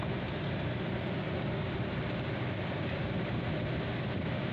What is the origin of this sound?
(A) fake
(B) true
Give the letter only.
B